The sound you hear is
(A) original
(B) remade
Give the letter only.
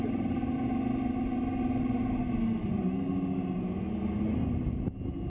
A